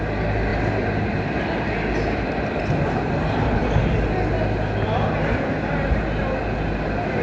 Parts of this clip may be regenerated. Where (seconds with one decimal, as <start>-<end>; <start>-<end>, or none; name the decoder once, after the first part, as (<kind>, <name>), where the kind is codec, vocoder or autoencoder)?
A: none